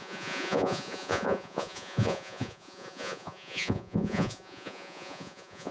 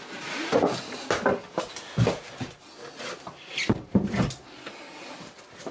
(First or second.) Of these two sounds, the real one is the second